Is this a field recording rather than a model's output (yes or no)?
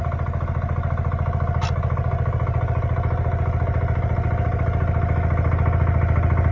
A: yes